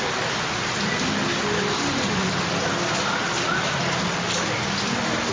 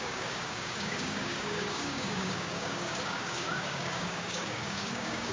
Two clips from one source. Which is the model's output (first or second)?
second